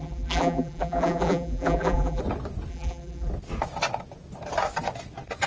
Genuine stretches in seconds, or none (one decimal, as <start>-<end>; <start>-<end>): 2.2-2.7; 3.3-5.5